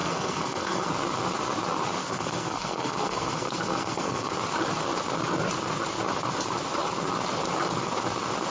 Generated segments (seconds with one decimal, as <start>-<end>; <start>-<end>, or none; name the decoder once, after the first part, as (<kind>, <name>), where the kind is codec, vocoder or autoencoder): 0.0-0.9 (codec, SNAC); 2.0-4.3